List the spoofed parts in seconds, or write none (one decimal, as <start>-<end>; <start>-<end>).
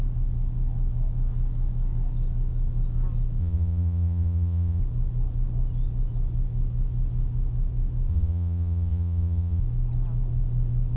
3.4-4.8; 8.1-9.6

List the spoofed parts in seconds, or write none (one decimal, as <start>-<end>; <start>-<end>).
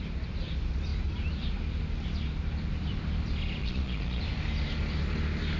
3.6-4.2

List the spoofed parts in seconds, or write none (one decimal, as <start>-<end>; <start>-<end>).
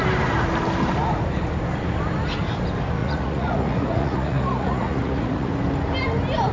3.0-5.5